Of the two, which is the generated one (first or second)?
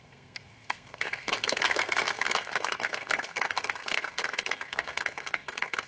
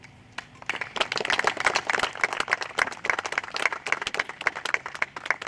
first